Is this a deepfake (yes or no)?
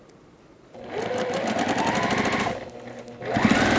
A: no